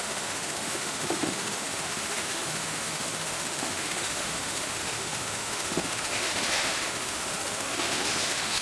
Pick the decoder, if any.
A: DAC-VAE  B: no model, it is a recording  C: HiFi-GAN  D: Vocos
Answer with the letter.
A